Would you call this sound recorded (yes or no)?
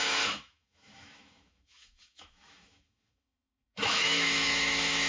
no